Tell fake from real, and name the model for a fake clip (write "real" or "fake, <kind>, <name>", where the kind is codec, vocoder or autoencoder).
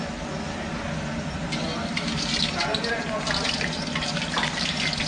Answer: real